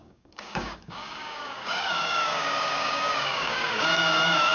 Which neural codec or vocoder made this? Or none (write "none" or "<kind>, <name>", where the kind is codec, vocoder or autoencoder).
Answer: codec, DAC